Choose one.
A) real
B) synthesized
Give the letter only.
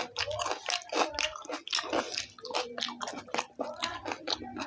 A